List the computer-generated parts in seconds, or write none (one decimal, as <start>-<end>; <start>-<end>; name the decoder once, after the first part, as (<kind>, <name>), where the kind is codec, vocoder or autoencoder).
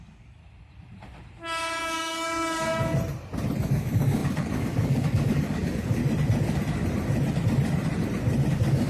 0.0-0.4 (codec, DAC); 1.8-2.9; 3.6-6.0; 8.5-8.9